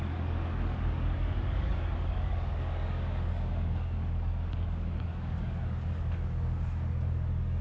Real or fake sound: fake